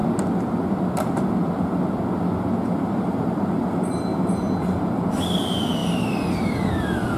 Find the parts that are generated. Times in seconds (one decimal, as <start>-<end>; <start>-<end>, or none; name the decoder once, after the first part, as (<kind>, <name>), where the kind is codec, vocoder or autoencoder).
5.8-6.7 (vocoder, BigVGAN v2)